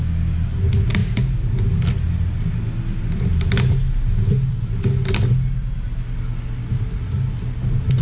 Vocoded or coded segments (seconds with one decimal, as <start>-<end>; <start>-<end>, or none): none